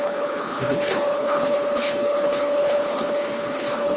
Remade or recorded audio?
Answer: remade